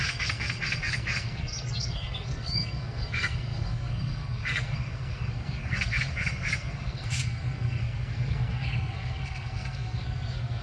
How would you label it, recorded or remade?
remade